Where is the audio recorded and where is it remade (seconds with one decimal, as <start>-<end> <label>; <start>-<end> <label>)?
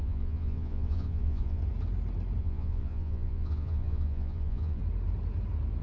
0.0-1.6 remade; 1.6-2.4 recorded; 2.4-4.8 remade; 4.8-5.8 recorded